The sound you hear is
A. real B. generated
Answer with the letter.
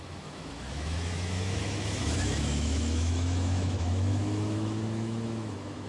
B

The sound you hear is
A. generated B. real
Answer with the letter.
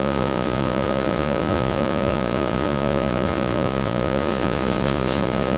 A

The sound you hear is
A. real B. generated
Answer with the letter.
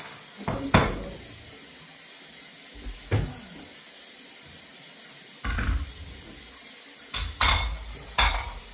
A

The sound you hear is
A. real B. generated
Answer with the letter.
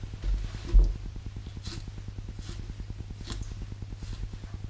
A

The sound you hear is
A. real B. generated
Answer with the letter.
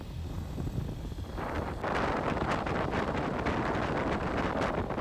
A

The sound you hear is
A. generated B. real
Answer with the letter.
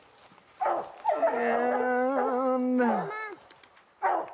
B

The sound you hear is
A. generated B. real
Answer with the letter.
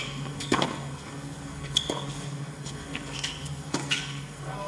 A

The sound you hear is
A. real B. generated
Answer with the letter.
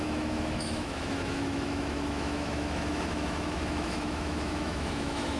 B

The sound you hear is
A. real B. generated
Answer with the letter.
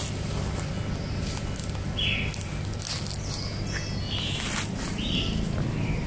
A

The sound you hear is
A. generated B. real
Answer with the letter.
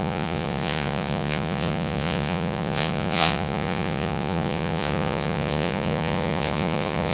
A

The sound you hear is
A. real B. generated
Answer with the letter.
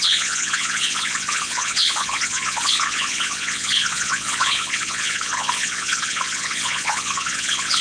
B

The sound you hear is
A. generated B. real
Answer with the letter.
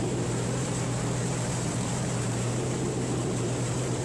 A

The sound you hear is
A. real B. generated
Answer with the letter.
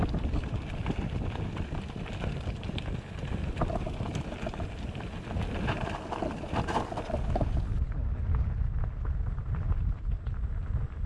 A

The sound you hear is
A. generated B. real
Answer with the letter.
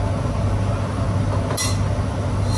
B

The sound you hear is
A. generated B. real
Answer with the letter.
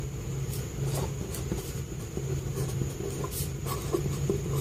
B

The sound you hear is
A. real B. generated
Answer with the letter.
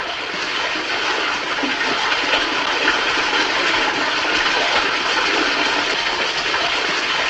A